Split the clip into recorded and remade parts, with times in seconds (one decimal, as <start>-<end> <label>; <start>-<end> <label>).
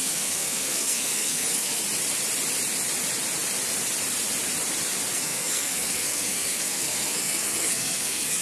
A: 0.0-1.8 remade; 1.8-5.1 recorded; 5.1-8.4 remade